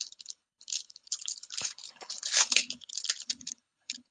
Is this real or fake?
fake